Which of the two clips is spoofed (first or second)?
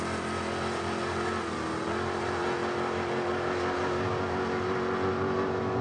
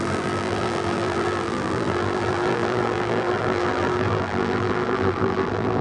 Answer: second